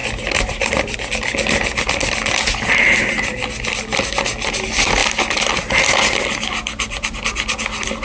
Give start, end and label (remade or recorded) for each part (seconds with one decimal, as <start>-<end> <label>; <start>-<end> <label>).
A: 0.0-8.0 recorded